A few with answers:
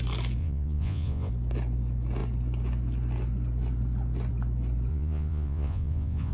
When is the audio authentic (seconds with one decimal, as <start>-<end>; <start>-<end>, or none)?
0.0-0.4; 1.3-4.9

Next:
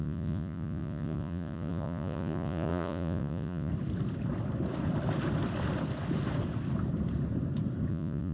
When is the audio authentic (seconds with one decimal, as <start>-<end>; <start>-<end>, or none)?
3.7-7.9

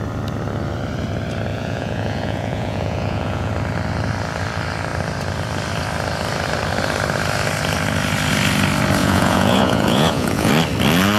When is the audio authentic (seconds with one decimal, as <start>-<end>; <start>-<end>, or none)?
0.0-1.5; 3.5-9.0; 10.5-11.2

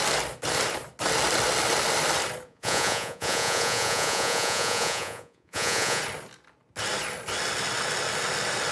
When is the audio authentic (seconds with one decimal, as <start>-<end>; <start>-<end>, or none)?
0.0-2.5; 6.0-8.7

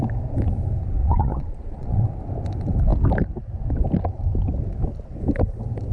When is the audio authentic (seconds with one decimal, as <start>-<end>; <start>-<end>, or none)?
0.0-1.0; 2.0-5.9

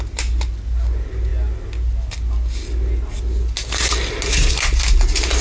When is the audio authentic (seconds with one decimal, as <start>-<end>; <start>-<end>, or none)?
0.0-5.4

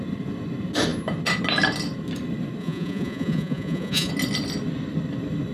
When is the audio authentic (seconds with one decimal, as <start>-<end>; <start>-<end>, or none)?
0.0-2.6; 4.1-5.5